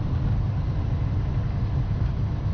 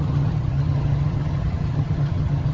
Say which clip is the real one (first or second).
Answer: first